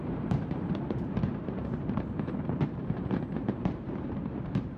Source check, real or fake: fake